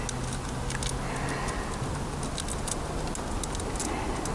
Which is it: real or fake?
real